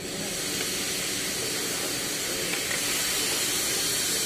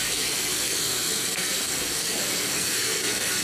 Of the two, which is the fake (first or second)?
second